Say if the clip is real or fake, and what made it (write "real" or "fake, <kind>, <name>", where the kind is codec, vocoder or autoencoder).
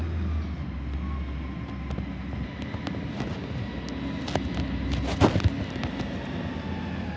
real